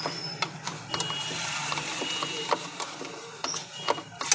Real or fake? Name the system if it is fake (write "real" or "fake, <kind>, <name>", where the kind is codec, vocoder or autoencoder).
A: real